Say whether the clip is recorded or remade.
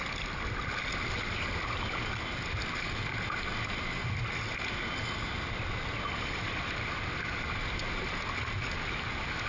recorded